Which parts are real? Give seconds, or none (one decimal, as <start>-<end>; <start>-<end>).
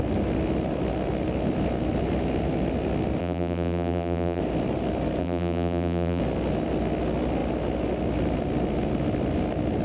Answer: 0.0-3.2; 4.4-5.2; 6.2-9.8